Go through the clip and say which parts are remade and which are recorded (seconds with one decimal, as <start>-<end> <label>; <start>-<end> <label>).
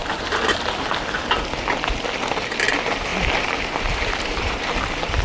0.0-0.6 remade; 0.6-3.1 recorded; 3.1-4.7 remade; 4.7-5.2 recorded